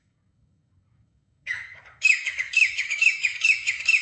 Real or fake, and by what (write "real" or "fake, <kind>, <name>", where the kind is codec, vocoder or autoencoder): fake, codec, DAC